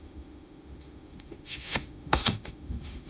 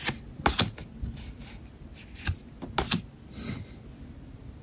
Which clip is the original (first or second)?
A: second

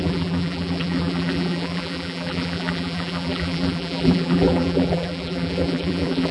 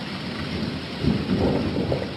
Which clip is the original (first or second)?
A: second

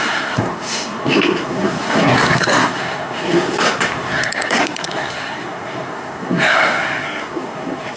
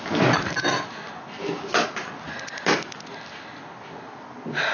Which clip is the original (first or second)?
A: second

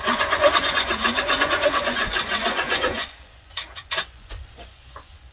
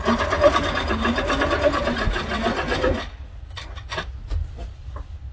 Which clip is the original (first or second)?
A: second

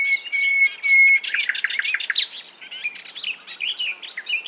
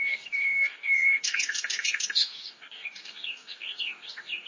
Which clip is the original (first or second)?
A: first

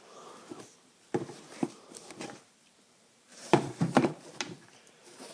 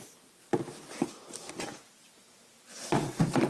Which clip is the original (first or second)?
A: second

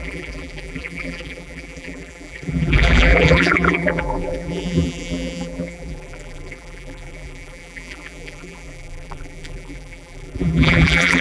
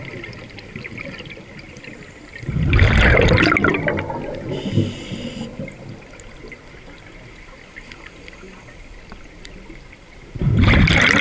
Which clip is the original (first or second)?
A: second